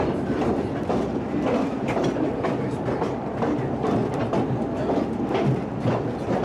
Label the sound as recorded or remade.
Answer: recorded